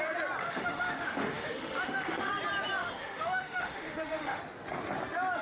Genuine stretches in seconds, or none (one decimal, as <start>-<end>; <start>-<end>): 0.0-0.4; 2.4-2.8; 4.4-5.4